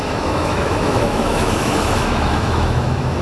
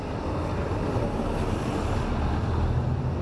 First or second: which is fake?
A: first